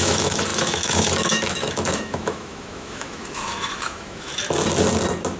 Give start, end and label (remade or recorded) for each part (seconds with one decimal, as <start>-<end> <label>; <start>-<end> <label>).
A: 0.0-4.3 remade; 4.3-5.4 recorded